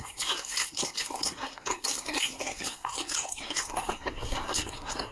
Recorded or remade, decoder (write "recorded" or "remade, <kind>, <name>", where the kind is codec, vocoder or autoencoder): remade, codec, SNAC